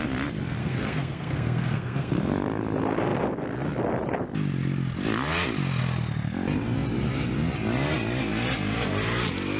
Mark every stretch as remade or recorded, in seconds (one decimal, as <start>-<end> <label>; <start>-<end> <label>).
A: 0.0-0.6 recorded; 0.6-2.1 remade; 2.1-9.6 recorded